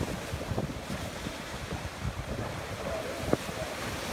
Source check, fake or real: fake